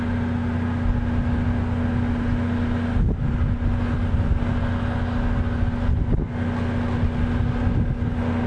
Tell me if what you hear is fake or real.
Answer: real